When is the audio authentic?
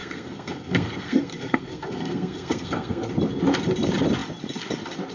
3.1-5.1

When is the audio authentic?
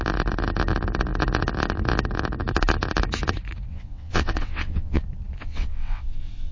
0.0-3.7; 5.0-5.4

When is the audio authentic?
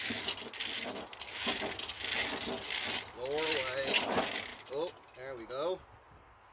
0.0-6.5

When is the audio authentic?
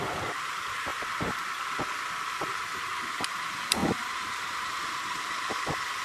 0.9-2.5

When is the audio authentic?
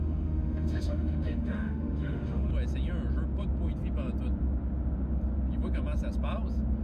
2.5-6.8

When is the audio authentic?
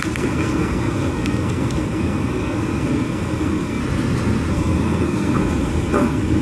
3.8-4.5